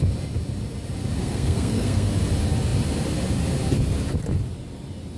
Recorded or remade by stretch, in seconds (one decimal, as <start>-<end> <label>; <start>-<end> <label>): 0.0-1.2 recorded; 1.2-2.1 remade; 2.1-5.2 recorded

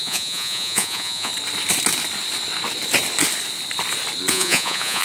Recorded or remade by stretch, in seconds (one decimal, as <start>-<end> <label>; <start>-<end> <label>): 0.0-1.3 remade; 1.3-4.3 recorded; 4.3-5.0 remade

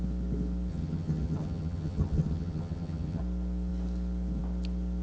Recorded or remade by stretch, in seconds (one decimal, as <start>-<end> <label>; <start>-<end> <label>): 0.0-0.7 recorded; 0.7-3.2 remade; 3.2-5.0 recorded

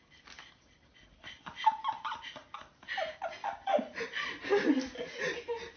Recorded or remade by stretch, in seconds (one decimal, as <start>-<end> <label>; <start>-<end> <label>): 0.0-2.4 recorded; 2.4-2.9 remade; 2.9-5.8 recorded

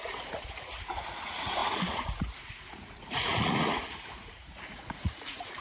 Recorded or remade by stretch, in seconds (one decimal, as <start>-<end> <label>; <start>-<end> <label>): 0.0-5.6 remade

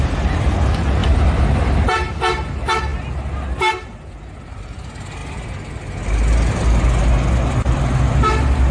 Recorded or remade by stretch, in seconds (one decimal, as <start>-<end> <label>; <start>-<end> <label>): 0.0-1.0 recorded; 1.0-1.9 remade; 1.9-8.7 recorded

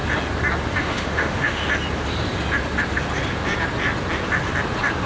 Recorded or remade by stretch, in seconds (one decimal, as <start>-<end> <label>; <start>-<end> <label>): 0.0-0.8 recorded; 0.8-1.6 remade; 1.6-5.1 recorded